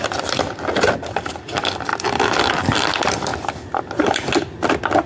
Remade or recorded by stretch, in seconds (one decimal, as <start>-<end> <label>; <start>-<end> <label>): 0.0-5.1 recorded